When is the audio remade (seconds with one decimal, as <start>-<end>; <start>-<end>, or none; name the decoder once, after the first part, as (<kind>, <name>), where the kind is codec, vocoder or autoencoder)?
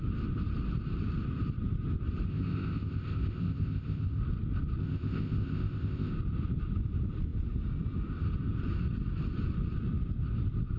2.3-4.2 (codec, ZipCodec); 4.8-6.1